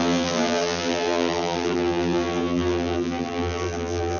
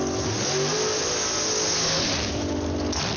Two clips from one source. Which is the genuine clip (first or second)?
second